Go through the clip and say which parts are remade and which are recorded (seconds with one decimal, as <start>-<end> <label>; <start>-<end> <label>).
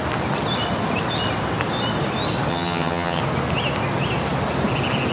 0.0-2.5 recorded; 2.5-3.2 remade; 3.2-5.1 recorded